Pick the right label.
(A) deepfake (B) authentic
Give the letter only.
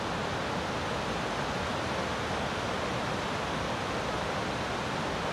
B